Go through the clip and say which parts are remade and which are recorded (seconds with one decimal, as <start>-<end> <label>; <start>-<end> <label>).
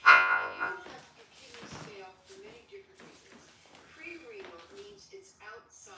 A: 0.0-0.7 remade; 0.7-6.0 recorded